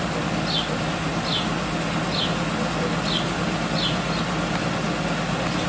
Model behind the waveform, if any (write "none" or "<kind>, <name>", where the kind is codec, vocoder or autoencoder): none